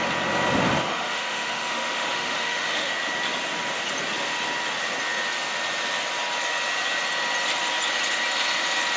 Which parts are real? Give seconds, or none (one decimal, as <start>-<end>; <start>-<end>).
0.0-0.9; 2.9-9.0